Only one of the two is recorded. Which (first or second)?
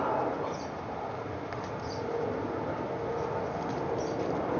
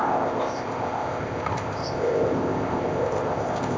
first